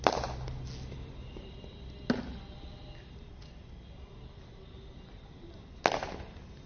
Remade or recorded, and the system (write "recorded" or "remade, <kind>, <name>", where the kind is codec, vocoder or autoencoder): recorded